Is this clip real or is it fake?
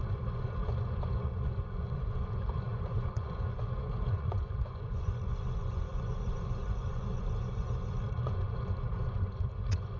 fake